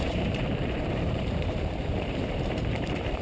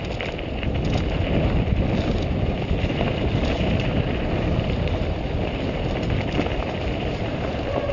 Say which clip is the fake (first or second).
first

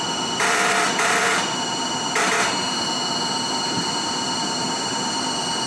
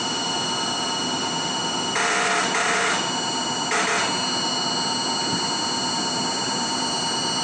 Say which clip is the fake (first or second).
first